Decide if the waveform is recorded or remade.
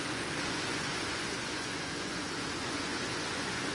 remade